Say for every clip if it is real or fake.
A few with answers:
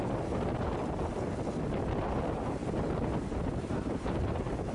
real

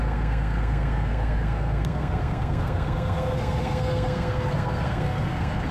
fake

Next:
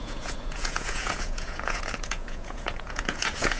fake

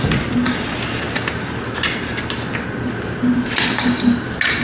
real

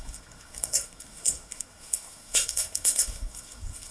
fake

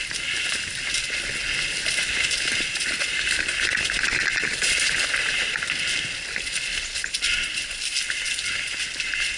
real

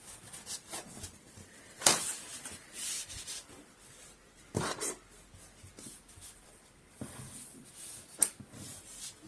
real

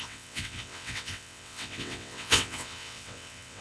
fake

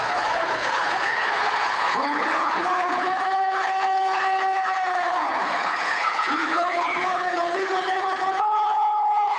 fake